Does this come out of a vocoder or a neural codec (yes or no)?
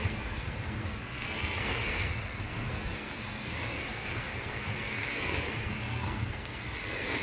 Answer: yes